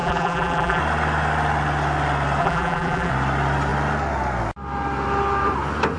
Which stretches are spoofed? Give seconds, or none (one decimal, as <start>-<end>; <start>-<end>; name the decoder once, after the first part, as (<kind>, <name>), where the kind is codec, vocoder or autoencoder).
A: 0.0-0.8 (vocoder, BigVGAN v2); 2.4-3.1